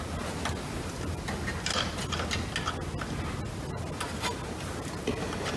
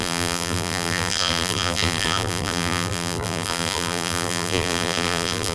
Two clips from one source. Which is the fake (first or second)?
second